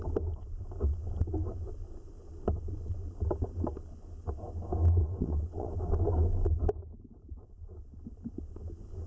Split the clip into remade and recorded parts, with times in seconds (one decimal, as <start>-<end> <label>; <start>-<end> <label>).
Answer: 0.0-5.0 recorded; 5.0-5.7 remade; 5.7-9.1 recorded